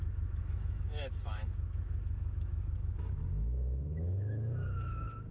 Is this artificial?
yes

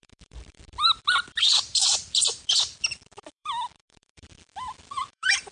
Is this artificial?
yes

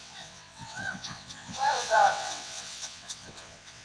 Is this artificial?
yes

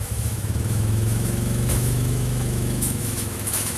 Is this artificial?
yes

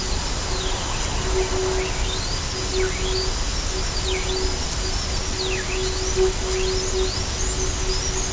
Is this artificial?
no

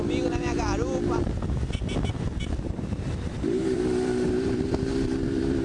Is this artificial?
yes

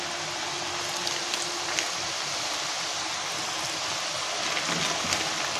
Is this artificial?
no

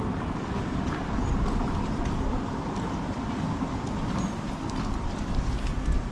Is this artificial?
no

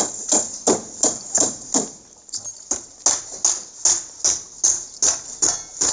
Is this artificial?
no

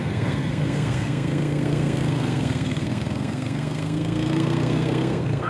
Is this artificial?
yes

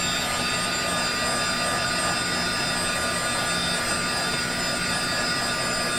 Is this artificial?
no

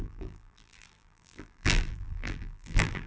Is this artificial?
yes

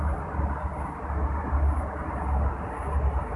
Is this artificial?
no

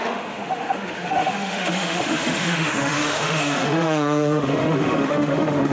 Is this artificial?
yes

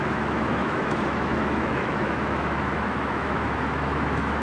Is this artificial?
yes